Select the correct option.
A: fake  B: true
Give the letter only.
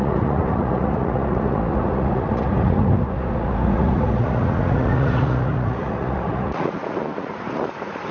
A